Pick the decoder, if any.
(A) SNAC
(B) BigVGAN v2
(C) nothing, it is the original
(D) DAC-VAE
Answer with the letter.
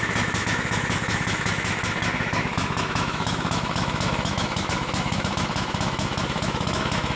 D